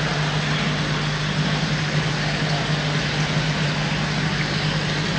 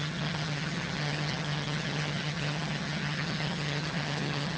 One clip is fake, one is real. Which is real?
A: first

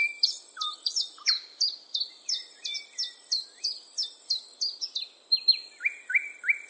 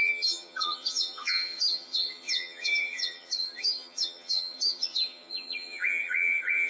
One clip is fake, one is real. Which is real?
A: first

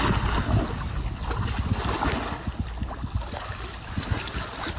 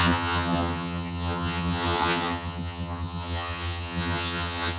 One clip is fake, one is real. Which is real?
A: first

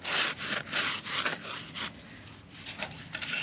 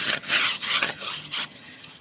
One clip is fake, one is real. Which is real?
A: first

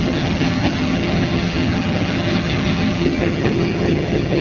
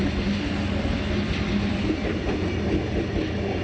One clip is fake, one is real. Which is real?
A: second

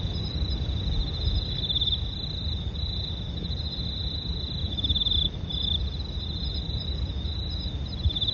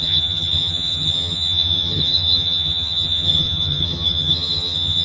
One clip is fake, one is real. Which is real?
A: first